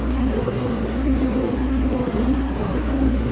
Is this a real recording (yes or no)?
no